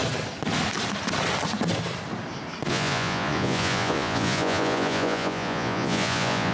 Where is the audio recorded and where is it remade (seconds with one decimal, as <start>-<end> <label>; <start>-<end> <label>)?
0.0-2.7 recorded; 2.7-6.5 remade